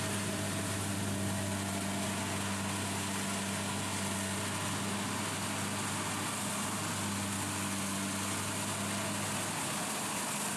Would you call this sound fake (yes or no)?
no